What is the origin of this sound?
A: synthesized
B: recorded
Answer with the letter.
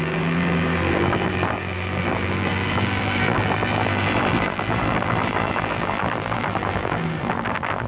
A